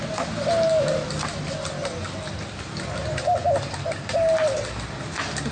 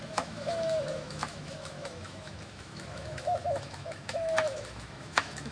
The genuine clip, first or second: first